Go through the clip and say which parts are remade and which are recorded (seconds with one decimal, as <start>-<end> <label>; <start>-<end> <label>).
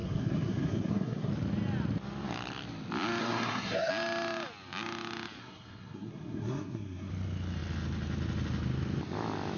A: 0.0-1.3 remade; 1.3-3.2 recorded; 3.2-3.9 remade; 3.9-5.4 recorded; 5.4-7.1 remade; 7.1-9.6 recorded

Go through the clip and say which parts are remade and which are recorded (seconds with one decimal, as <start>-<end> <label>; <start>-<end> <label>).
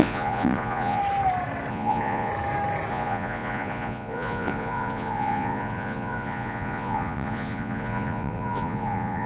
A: 0.0-1.0 remade; 1.0-1.7 recorded; 1.7-2.3 remade; 2.3-2.9 recorded; 2.9-9.3 remade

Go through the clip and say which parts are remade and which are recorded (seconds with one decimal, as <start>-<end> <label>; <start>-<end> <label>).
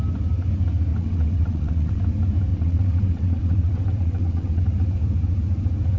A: 0.0-0.9 recorded; 0.9-2.0 remade; 2.0-2.5 recorded; 2.5-4.6 remade; 4.6-6.0 recorded